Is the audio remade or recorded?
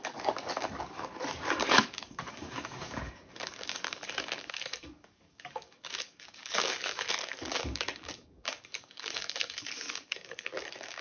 remade